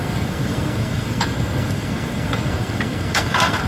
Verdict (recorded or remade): remade